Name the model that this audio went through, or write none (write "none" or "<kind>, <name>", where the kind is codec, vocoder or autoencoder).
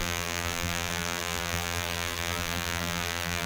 vocoder, BigVGAN v2